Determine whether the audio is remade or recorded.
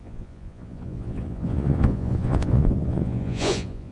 remade